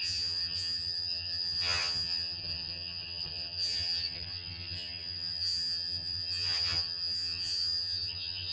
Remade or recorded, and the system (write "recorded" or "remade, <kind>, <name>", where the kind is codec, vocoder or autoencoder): remade, vocoder, HiFi-GAN